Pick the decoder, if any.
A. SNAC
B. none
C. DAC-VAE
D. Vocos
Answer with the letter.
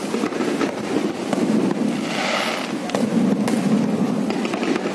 B